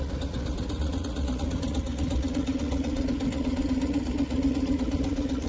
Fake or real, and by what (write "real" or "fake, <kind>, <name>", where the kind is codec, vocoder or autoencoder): fake, vocoder, Vocos